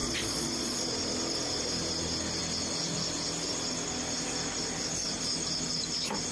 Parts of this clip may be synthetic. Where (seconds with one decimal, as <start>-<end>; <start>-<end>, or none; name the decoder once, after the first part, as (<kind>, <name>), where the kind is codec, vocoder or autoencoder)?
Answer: 0.0-0.8 (vocoder, Vocos)